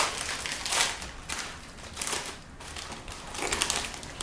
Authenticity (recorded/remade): recorded